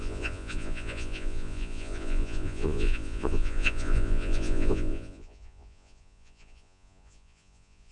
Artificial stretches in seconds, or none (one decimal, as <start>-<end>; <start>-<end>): 0.0-7.9